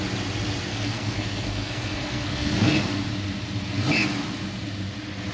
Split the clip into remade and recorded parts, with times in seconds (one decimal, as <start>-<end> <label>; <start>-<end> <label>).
0.0-0.7 recorded; 0.7-3.0 remade; 3.0-5.3 recorded